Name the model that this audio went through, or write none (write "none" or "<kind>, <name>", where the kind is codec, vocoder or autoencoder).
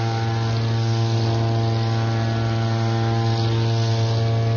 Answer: none